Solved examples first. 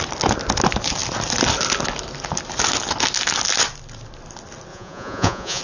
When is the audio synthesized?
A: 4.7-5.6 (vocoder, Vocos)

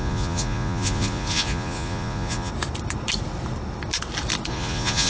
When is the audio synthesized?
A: 0.0-2.5 (vocoder, Vocos); 4.5-5.1

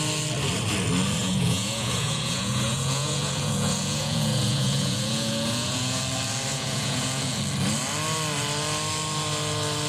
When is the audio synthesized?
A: 1.2-6.0 (vocoder, Vocos); 6.5-7.4

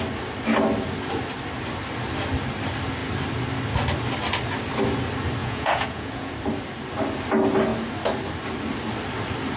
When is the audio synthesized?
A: 5.4-6.3 (vocoder, Vocos)

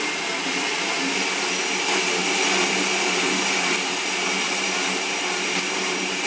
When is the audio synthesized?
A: none

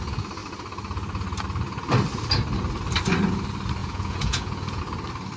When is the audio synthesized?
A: 3.8-4.8 (vocoder, Vocos)